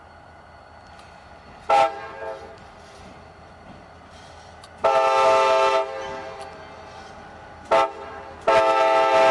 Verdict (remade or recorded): recorded